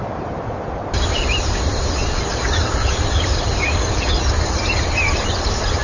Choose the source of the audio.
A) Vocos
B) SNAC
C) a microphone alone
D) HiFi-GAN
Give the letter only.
C